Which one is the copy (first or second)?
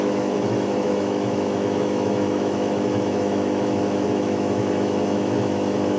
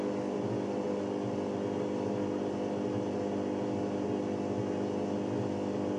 first